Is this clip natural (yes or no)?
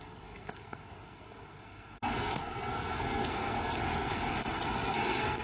no